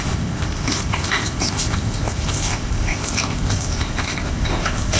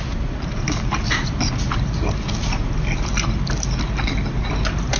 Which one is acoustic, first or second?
second